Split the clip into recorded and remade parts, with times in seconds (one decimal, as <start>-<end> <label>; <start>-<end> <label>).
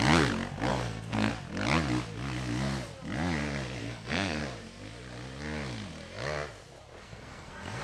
0.0-0.7 recorded; 0.7-1.3 remade; 1.3-3.8 recorded; 3.8-4.4 remade; 4.4-7.0 recorded; 7.0-7.8 remade